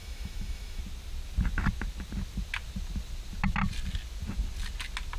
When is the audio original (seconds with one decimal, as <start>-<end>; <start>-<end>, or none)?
0.8-5.2